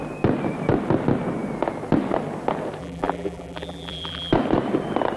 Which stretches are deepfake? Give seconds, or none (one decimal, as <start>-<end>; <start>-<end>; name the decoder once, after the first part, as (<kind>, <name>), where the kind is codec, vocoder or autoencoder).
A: 2.8-4.3 (vocoder, BigVGAN v2)